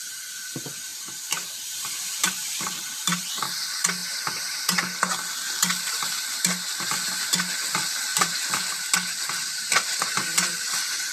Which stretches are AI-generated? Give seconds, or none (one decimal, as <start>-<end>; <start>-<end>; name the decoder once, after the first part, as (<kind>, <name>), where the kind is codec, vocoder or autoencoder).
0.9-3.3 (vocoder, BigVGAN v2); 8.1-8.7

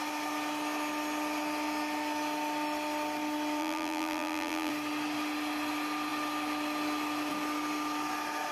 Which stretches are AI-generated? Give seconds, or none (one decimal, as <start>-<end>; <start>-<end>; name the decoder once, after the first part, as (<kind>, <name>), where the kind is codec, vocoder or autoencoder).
3.6-4.7 (vocoder, BigVGAN v2)

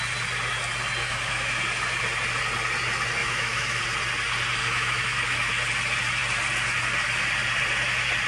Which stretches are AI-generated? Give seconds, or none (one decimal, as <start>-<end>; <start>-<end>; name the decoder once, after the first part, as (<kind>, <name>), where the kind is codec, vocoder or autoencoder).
1.0-1.6 (autoencoder, DAC-VAE); 3.2-3.8; 4.6-5.5

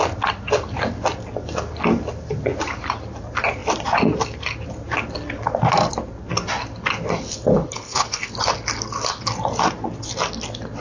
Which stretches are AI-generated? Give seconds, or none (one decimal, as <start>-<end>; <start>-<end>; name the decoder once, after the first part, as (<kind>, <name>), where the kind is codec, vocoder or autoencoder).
7.5-8.3 (codec, HILCodec)

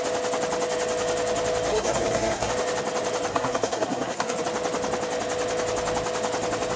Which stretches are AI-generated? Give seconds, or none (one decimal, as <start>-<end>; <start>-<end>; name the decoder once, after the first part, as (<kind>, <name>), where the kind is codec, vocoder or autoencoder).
1.7-2.5 (codec, SNAC); 3.3-4.4